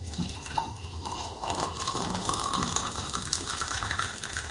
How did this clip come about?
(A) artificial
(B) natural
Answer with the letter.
A